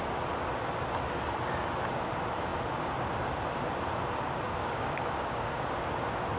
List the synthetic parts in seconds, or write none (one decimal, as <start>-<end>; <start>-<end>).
4.6-5.8